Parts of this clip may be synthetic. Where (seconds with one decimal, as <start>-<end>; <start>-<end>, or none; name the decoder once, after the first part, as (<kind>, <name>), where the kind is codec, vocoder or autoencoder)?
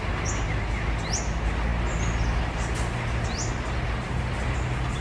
none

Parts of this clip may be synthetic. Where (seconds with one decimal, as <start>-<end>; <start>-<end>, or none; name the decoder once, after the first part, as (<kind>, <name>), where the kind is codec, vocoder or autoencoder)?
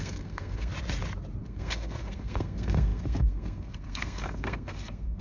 0.0-0.7 (codec, SNAC); 1.4-5.2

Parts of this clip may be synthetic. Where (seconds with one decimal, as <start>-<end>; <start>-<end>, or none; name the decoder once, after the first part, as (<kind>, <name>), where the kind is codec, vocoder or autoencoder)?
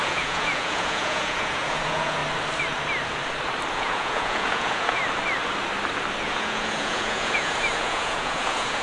0.0-2.2 (vocoder, Vocos); 3.7-5.0; 6.2-8.8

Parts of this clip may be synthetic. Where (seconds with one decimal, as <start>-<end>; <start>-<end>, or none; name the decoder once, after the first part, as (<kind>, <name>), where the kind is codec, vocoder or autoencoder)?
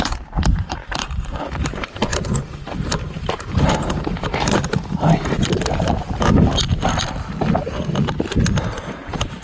0.0-6.6 (vocoder, BigVGAN v2); 8.9-9.4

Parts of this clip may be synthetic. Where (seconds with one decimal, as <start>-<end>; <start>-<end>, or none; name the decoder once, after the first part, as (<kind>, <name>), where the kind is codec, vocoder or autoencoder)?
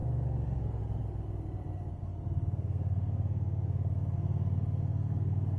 0.0-0.8 (codec, SNAC); 1.9-5.6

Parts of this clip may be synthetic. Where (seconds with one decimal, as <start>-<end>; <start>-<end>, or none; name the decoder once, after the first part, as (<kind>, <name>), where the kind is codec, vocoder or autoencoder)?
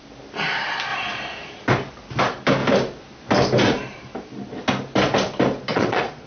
5.7-6.3 (vocoder, Vocos)